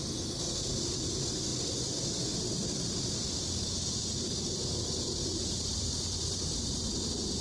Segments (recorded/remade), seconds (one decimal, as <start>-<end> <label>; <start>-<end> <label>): 0.0-5.3 recorded; 5.3-6.4 remade; 6.4-7.4 recorded